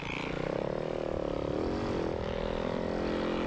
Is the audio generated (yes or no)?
no